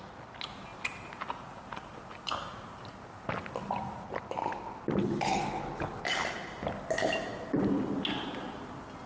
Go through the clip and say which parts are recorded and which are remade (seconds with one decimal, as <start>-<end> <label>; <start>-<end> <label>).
0.0-5.0 recorded; 5.0-6.0 remade; 6.0-9.1 recorded